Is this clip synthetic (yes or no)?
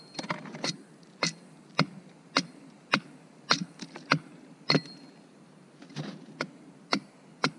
no